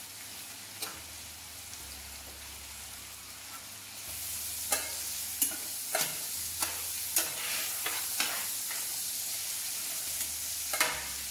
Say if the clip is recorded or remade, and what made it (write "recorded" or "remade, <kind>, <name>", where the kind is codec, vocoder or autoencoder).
recorded